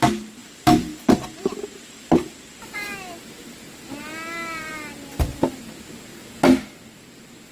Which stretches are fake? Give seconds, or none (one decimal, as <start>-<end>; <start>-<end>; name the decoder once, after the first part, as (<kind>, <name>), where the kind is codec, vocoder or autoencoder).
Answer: 0.4-1.4 (vocoder, BigVGAN v2); 6.1-7.0